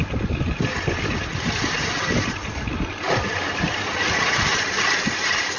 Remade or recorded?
recorded